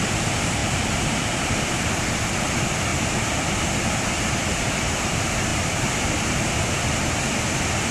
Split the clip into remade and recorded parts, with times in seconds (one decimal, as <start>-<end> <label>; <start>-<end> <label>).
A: 0.0-0.6 remade; 0.6-1.4 recorded; 1.4-2.9 remade; 2.9-4.6 recorded; 4.6-7.9 remade